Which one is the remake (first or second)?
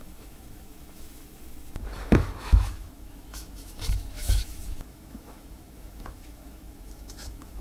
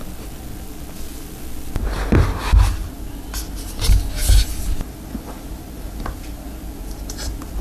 first